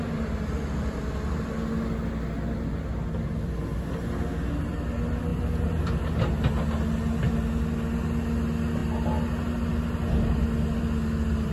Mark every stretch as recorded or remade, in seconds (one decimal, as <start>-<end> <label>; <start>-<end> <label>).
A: 0.0-11.5 recorded